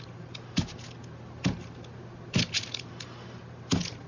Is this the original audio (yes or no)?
yes